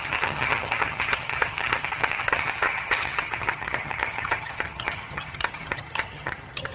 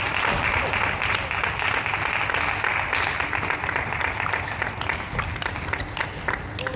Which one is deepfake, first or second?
first